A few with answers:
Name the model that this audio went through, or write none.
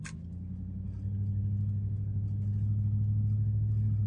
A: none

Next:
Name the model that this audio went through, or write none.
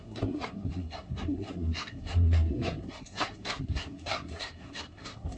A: codec, SNAC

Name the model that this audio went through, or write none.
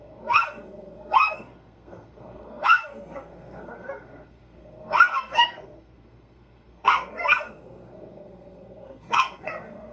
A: codec, SNAC